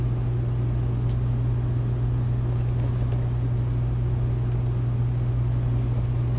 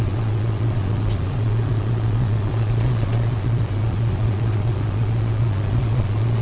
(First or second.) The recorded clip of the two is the first